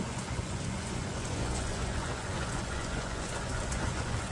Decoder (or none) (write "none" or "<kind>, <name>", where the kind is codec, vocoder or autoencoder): vocoder, Vocos